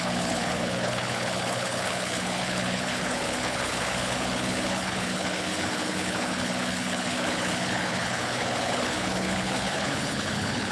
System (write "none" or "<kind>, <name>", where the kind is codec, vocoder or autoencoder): codec, HILCodec